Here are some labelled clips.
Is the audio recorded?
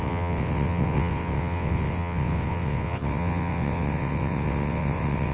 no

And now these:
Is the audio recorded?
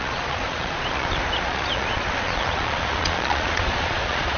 no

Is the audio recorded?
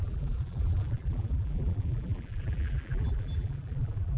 no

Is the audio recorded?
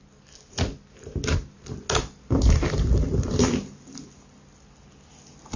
yes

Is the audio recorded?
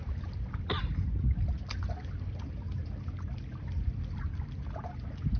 yes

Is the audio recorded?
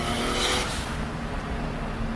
yes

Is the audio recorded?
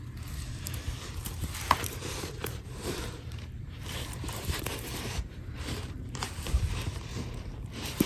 no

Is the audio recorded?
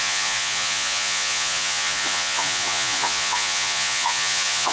no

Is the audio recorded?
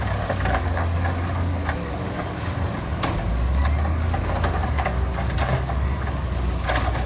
no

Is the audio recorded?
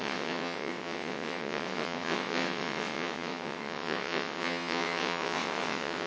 no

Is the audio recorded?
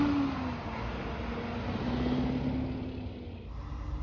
yes